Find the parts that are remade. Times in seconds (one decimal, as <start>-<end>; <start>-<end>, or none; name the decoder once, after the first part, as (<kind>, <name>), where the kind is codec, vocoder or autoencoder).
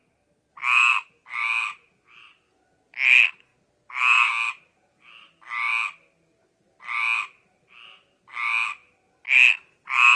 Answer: none